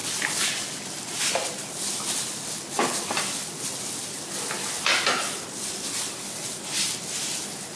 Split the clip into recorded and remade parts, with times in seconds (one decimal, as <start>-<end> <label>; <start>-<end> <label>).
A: 0.0-7.8 recorded